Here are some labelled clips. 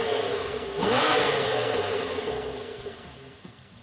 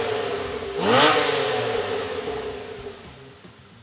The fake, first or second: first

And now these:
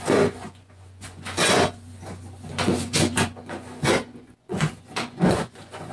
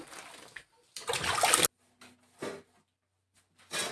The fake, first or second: first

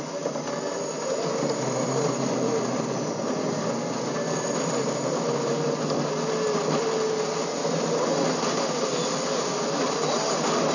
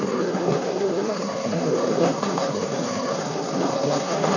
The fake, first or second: second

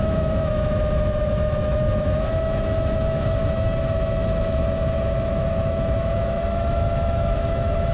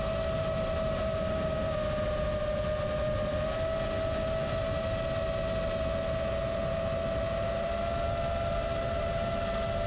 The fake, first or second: first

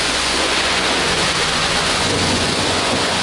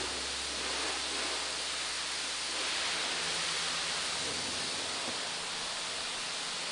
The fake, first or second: first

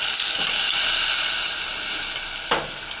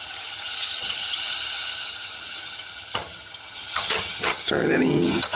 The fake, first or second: second